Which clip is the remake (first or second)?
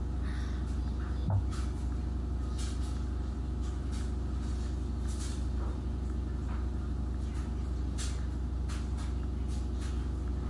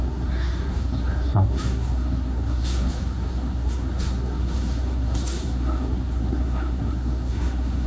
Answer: second